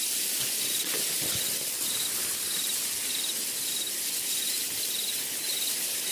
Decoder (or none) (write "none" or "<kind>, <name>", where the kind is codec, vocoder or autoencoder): none